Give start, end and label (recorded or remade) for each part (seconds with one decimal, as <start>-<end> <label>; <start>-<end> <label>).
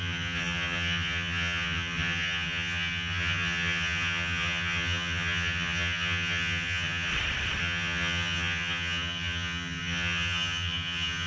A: 0.0-7.1 remade; 7.1-7.6 recorded; 7.6-11.3 remade